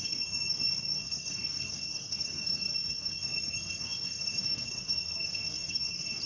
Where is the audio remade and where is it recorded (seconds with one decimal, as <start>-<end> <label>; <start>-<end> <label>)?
0.0-6.3 remade